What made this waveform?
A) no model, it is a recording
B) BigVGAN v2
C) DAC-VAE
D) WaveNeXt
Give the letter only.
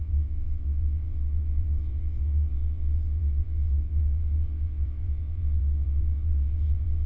D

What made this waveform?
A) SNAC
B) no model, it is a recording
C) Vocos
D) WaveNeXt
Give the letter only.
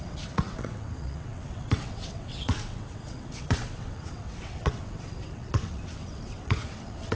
D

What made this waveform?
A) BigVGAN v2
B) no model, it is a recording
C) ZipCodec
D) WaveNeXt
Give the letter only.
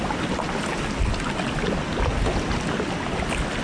B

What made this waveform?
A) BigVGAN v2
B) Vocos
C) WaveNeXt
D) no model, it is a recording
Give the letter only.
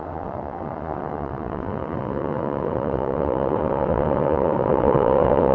C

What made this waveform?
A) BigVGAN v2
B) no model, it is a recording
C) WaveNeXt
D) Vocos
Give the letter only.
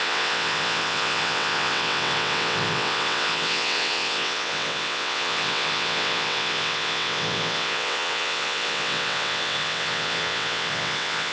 C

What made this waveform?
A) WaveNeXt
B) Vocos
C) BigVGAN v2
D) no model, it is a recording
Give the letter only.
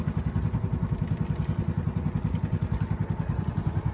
D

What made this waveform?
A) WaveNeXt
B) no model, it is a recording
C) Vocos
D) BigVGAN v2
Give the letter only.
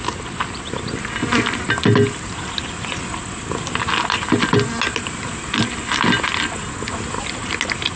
B